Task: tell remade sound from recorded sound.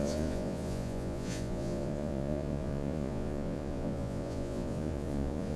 remade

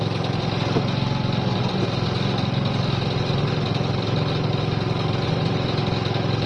recorded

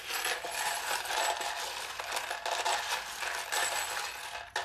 recorded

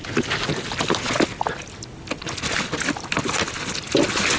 recorded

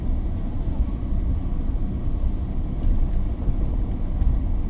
recorded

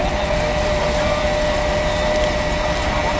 recorded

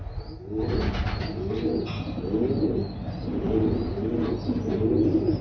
recorded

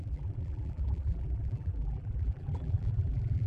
remade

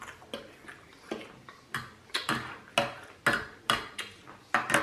recorded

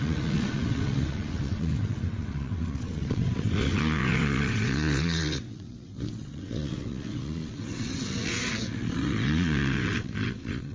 remade